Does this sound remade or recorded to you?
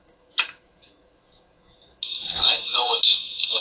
remade